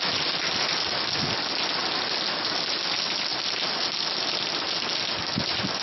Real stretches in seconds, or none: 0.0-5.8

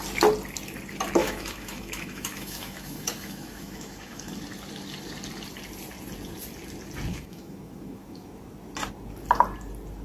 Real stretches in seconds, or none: 0.0-1.2; 4.2-7.1; 8.4-10.0

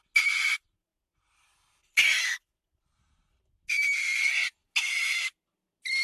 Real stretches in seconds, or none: 0.0-6.0

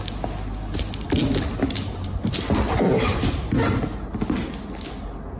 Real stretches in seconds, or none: 0.0-5.4

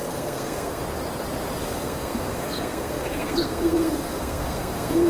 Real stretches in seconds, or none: 0.8-1.6

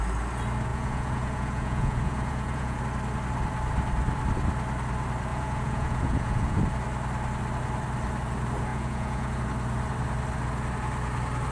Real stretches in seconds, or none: 0.0-0.7; 2.8-5.3; 6.6-8.7; 9.4-11.5